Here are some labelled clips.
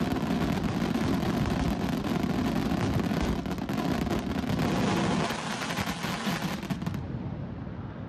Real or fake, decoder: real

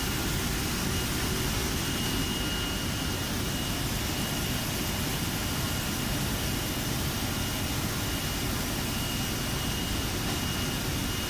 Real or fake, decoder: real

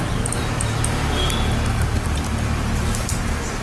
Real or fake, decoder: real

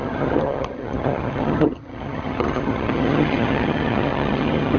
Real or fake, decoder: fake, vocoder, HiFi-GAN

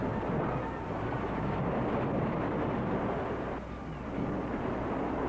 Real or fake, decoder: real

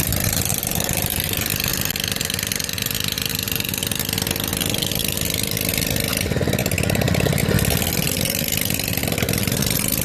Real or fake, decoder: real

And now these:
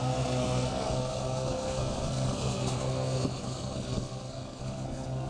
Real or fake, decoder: fake, codec, SNAC